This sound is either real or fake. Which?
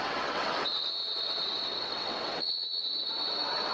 fake